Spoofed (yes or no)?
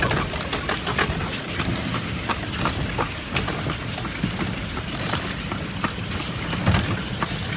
no